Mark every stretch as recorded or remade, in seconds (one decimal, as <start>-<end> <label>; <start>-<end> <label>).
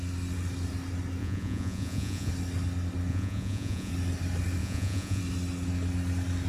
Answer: 0.0-1.2 recorded; 1.2-2.3 remade; 2.3-3.1 recorded; 3.1-3.9 remade; 3.9-4.6 recorded; 4.6-5.2 remade; 5.2-6.5 recorded